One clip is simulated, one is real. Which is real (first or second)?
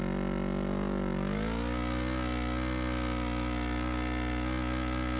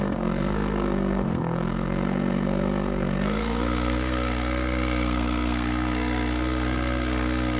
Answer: first